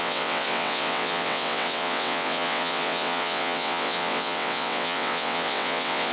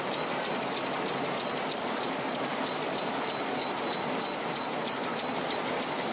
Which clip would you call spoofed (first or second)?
first